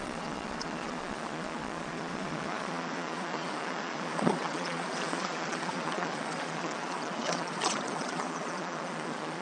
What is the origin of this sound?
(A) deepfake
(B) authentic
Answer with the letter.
A